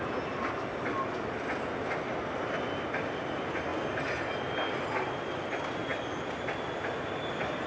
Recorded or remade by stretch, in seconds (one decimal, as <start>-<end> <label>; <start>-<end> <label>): 0.0-7.7 recorded